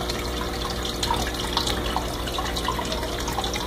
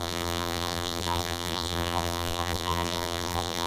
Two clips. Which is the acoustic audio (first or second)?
first